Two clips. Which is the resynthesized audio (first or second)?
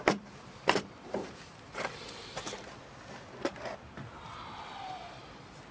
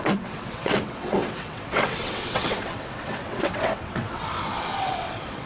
second